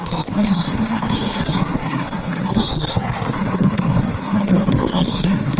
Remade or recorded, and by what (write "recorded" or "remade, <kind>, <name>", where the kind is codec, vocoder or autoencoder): remade, codec, SNAC